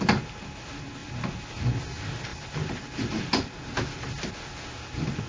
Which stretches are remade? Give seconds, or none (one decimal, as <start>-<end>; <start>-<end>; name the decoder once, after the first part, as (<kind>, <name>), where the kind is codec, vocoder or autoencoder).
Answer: 2.3-4.3 (vocoder, BigVGAN v2)